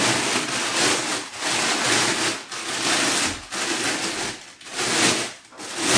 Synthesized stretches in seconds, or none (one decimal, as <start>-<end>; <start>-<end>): none